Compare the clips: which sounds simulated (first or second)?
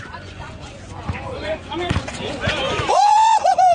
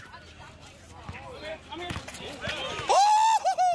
first